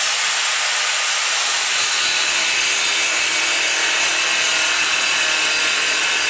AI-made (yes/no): no